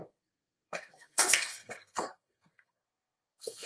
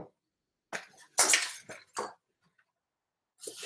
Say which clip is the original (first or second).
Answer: second